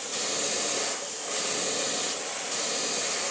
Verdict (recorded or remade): recorded